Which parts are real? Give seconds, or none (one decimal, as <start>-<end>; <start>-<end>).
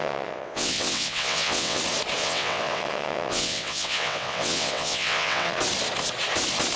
1.8-2.2; 5.6-6.8